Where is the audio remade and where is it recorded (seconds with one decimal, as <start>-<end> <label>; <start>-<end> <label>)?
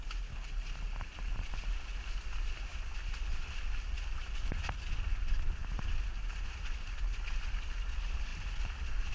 0.0-9.1 recorded